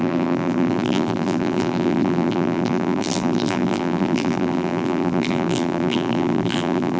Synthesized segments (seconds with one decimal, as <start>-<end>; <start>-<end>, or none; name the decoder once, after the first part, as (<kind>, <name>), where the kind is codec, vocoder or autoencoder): 0.0-7.0 (vocoder, BigVGAN v2)